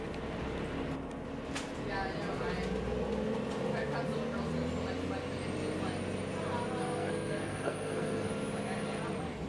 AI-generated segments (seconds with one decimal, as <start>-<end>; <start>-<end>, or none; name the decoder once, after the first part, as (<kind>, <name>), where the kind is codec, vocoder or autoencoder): 6.8-8.3 (codec, SNAC)

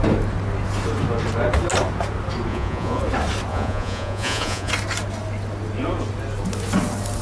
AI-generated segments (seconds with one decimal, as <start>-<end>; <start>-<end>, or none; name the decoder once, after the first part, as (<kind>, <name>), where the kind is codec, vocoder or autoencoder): 2.5-3.0 (vocoder, Vocos); 3.5-4.7

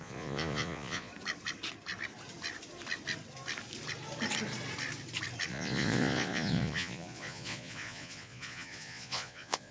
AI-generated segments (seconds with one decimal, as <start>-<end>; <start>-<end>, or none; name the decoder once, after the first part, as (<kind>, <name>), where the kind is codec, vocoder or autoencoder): 0.0-1.1 (vocoder, Vocos); 5.5-9.7

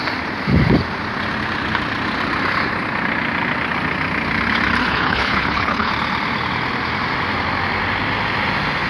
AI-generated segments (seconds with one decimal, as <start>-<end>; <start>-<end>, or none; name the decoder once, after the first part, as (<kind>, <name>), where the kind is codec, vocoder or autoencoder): 4.8-5.9 (codec, HILCodec)

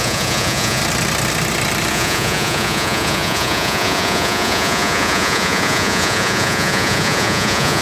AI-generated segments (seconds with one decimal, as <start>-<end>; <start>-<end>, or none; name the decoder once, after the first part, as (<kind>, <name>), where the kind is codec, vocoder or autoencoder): 0.0-0.8 (vocoder, Vocos); 1.9-7.8

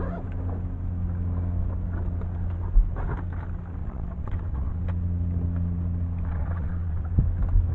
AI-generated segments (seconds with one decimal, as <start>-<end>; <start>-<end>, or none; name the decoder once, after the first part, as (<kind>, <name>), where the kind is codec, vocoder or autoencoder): 3.8-4.8 (vocoder, WaveNeXt); 6.3-7.1